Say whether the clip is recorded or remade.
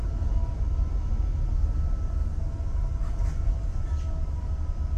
recorded